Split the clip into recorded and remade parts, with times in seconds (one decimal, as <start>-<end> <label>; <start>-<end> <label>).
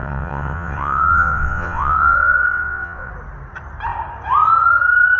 0.0-3.1 remade; 3.1-5.2 recorded